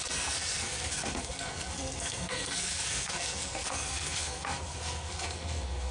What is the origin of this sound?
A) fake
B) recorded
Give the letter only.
A